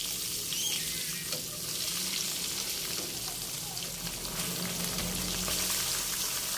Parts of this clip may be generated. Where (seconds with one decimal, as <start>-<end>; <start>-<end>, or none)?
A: none